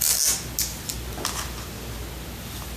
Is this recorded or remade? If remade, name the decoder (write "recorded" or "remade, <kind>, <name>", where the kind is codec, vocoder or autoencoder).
recorded